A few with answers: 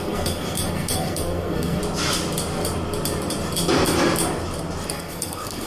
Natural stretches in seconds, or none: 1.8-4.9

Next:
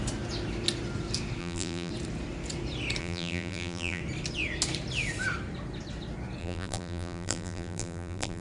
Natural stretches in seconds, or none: 0.0-1.4; 1.9-3.0; 4.0-6.4

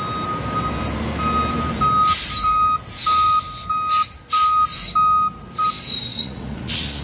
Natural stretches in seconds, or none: 0.0-6.1

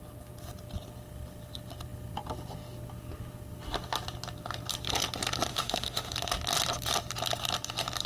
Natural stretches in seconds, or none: 0.0-5.5; 6.1-8.1